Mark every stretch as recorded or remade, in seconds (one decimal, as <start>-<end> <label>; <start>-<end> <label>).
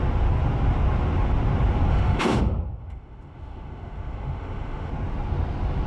0.0-1.9 recorded; 1.9-2.4 remade; 2.4-2.8 recorded; 2.8-4.9 remade; 4.9-5.9 recorded